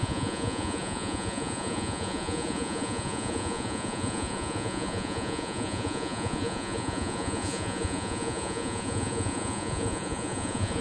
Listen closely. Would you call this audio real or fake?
fake